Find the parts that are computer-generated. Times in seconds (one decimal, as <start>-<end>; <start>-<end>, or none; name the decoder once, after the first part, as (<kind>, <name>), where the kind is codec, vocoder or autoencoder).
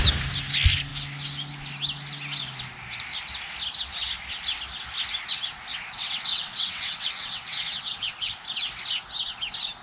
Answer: 5.7-8.4 (vocoder, WaveNeXt)